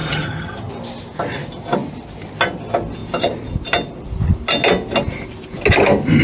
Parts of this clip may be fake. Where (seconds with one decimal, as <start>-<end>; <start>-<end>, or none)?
0.0-0.7